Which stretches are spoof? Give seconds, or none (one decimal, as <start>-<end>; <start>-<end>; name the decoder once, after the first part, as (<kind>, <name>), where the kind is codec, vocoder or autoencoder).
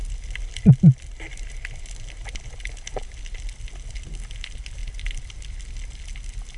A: none